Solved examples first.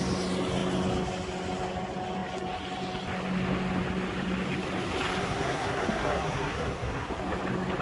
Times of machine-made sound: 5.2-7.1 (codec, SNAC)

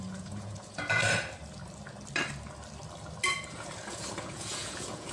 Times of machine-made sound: 0.0-1.0 (vocoder, Vocos); 3.5-5.1

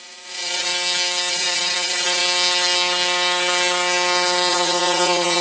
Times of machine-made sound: 0.0-0.7 (vocoder, Vocos); 1.3-2.2; 4.5-5.4

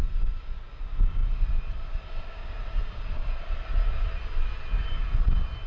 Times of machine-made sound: none

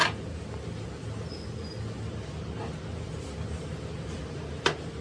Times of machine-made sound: none

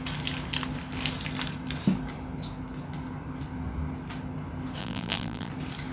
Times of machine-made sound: 4.8-5.5 (vocoder, BigVGAN v2)